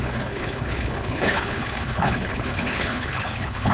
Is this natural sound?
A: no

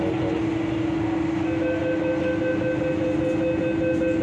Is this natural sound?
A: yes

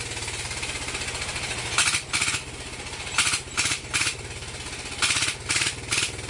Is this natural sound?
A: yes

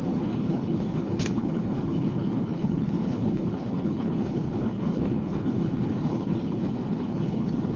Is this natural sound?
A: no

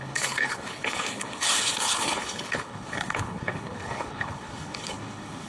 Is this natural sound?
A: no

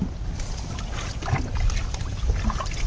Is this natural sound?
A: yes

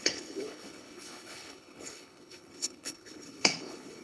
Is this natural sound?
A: no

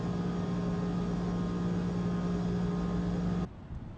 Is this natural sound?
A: yes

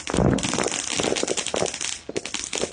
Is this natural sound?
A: yes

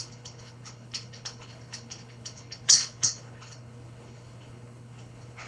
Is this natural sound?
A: no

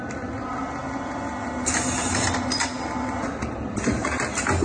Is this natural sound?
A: yes